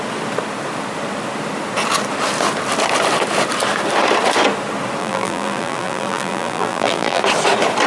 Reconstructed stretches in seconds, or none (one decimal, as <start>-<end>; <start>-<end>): 5.0-7.2